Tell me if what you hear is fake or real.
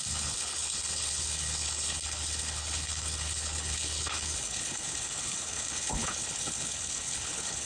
fake